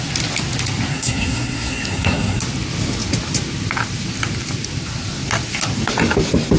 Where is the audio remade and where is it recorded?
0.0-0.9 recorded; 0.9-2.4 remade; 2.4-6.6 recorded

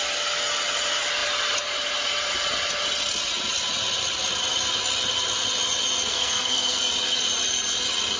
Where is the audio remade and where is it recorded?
0.0-6.1 recorded; 6.1-6.8 remade; 6.8-8.2 recorded

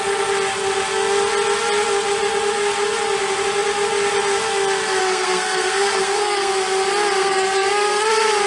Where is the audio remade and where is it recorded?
0.0-5.0 recorded; 5.0-6.5 remade; 6.5-7.2 recorded; 7.2-8.1 remade; 8.1-8.5 recorded

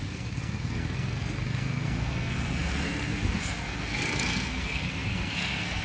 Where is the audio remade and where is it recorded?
0.0-5.8 remade

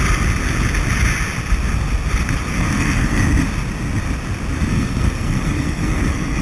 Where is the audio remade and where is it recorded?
0.0-2.6 recorded; 2.6-3.2 remade; 3.2-4.7 recorded; 4.7-6.4 remade

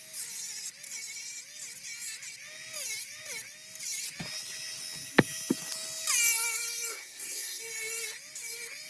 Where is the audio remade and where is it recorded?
0.0-6.9 recorded; 6.9-7.6 remade; 7.6-8.9 recorded

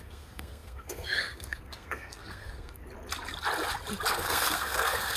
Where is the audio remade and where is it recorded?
0.0-2.8 remade; 2.8-4.1 recorded; 4.1-5.2 remade

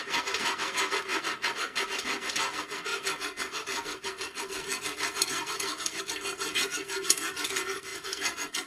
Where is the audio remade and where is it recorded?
0.0-8.7 remade